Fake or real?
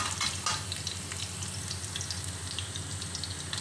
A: real